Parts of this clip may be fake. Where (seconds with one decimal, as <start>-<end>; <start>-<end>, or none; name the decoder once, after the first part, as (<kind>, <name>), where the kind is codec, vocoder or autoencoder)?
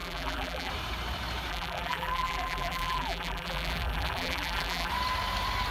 0.0-0.7 (vocoder, BigVGAN v2); 1.5-4.9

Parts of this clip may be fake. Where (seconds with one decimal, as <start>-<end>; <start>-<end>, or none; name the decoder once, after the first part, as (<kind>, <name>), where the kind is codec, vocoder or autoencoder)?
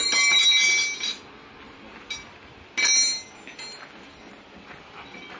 none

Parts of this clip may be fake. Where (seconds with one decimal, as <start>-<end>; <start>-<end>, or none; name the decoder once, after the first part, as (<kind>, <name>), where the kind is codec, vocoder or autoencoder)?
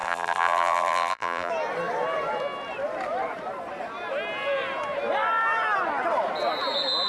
0.0-1.5 (vocoder, BigVGAN v2)